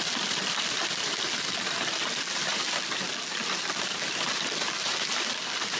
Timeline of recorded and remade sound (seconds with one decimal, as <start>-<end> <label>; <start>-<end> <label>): 0.0-4.8 recorded; 4.8-5.3 remade; 5.3-5.8 recorded